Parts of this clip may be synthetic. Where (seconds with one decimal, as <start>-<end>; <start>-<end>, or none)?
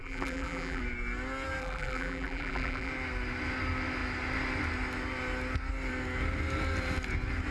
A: 0.0-0.8; 1.6-2.9